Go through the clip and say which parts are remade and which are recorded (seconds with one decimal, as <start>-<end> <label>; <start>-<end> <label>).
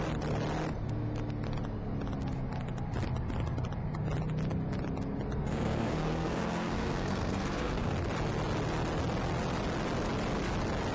0.0-5.4 recorded; 5.4-7.9 remade; 7.9-10.9 recorded